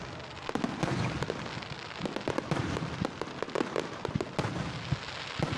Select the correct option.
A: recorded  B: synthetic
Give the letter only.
A